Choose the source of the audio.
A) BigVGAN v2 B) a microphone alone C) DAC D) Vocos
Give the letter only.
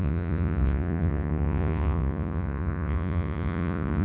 D